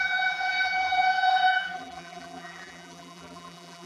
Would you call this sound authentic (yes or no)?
no